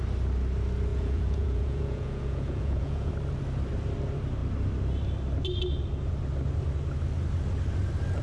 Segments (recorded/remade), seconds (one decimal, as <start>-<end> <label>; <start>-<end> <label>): 0.0-0.9 recorded; 0.9-3.1 remade; 3.1-8.2 recorded